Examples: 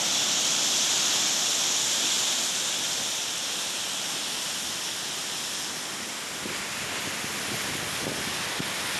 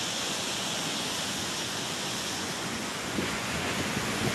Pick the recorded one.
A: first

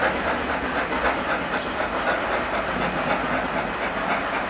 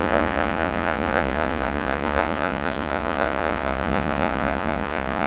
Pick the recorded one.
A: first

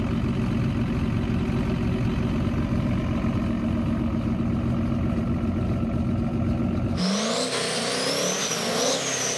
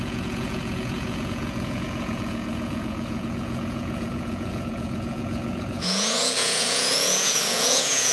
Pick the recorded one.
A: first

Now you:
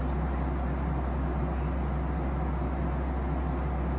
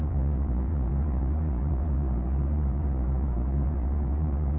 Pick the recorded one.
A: first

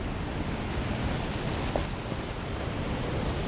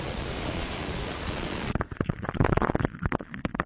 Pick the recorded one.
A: first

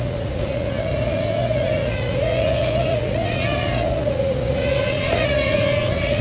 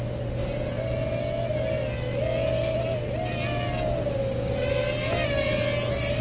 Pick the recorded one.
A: second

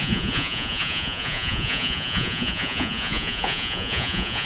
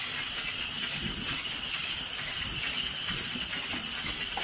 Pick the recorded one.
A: second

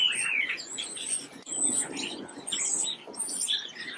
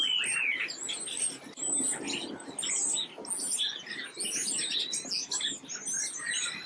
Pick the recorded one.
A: second